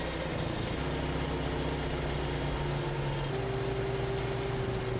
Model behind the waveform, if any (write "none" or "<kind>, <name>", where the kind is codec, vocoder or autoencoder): none